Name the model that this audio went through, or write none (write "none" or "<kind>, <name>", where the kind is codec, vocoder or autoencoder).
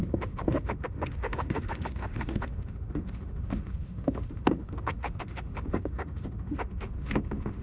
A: autoencoder, DAC-VAE